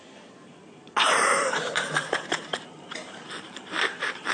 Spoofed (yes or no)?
yes